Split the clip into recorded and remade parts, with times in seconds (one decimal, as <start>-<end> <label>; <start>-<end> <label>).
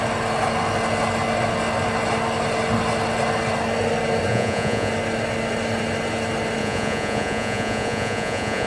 0.0-4.3 recorded; 4.3-4.9 remade; 4.9-6.6 recorded; 6.6-8.7 remade